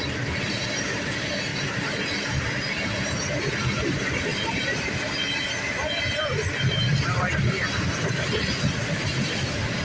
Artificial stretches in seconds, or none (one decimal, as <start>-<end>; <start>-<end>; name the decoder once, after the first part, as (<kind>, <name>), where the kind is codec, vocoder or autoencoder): none